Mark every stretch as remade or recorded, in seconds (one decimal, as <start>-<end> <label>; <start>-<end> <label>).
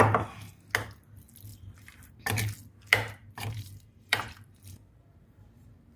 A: 0.0-1.5 recorded; 1.5-2.1 remade; 2.1-3.2 recorded; 3.2-6.0 remade